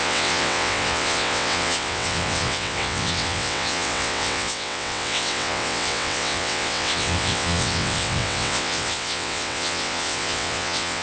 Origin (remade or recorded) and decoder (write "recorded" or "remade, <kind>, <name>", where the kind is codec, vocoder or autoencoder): remade, vocoder, WaveNeXt